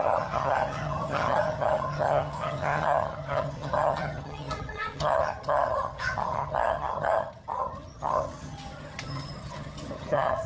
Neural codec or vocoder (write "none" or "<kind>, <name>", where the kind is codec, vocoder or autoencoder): vocoder, HiFi-GAN